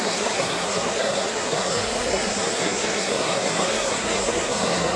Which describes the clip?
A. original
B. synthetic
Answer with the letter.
B